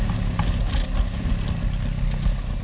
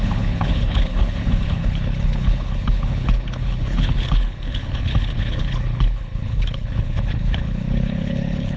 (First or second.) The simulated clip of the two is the second